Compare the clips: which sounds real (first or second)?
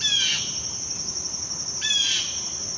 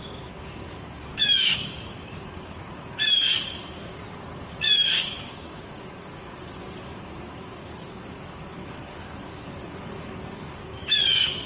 first